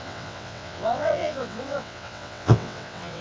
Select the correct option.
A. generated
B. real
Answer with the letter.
A